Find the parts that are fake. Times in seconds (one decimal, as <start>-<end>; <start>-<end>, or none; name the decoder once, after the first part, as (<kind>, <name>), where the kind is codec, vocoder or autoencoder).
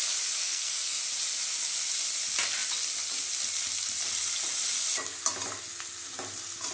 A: 0.4-1.0 (codec, SNAC)